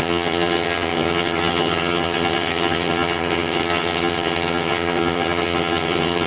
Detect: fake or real fake